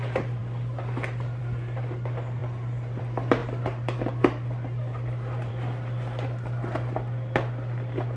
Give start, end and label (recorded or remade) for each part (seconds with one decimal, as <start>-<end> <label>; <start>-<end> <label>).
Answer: 0.0-8.2 recorded